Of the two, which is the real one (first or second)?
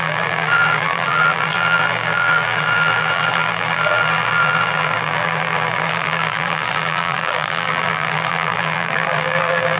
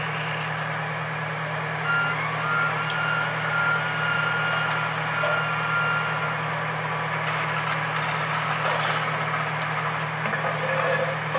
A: second